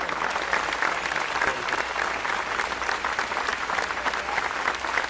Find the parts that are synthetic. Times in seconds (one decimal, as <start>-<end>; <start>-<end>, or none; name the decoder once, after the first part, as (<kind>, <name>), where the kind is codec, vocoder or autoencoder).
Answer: none